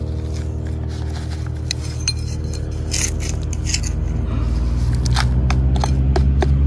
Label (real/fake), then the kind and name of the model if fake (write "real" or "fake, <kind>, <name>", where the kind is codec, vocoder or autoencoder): real